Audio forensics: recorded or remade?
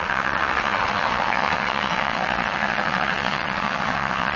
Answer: remade